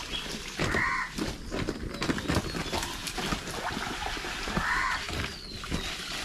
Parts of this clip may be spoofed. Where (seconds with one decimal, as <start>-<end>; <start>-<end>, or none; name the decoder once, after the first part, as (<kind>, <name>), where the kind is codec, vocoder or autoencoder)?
none